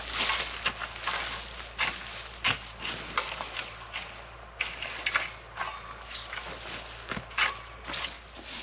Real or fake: real